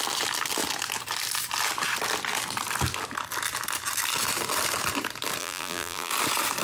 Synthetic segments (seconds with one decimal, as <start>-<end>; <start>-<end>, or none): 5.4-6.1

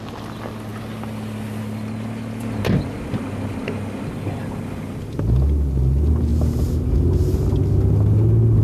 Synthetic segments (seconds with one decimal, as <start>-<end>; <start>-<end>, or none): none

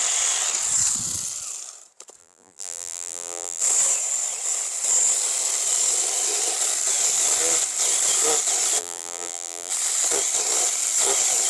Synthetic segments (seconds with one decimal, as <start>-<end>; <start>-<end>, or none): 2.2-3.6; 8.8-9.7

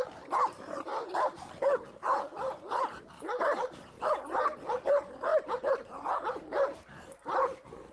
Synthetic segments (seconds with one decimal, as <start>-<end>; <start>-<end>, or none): 0.0-7.9

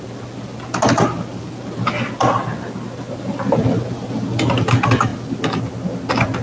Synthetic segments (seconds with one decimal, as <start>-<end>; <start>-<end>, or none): none